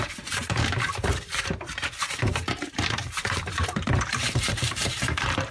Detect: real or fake fake